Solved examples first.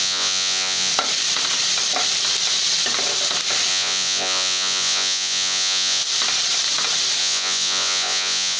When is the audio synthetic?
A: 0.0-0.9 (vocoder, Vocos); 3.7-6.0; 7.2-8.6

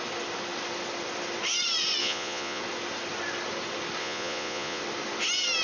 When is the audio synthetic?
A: 2.0-2.6 (vocoder, Vocos); 4.0-4.8

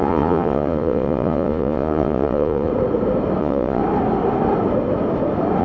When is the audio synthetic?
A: 0.0-2.7 (vocoder, Vocos); 3.4-3.8

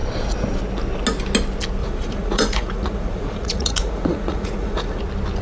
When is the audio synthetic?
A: 1.8-5.0 (vocoder, Vocos)

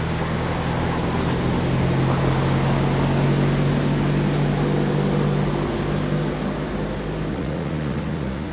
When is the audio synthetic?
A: 7.3-8.5 (vocoder, Vocos)

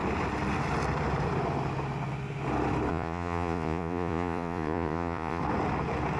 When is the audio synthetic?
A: 2.9-5.4 (vocoder, Vocos)

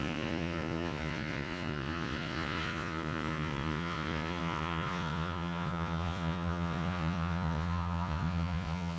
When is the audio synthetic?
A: 0.0-9.0 (vocoder, Vocos)